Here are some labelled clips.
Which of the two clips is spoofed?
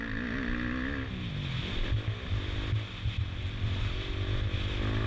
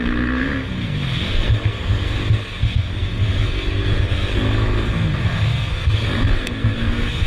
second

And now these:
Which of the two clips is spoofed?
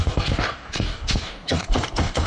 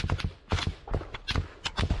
first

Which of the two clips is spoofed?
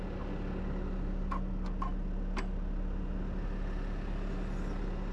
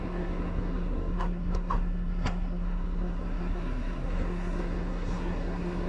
second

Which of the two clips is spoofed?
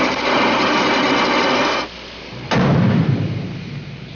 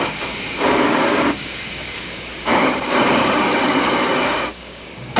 second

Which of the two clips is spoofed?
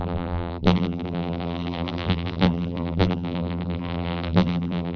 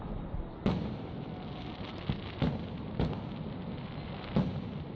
first